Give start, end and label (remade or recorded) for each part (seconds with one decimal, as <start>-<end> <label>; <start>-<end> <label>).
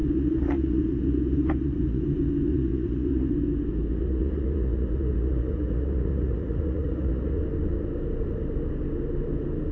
0.0-2.0 remade; 2.0-2.5 recorded; 2.5-3.3 remade; 3.3-3.9 recorded; 3.9-7.4 remade; 7.4-9.7 recorded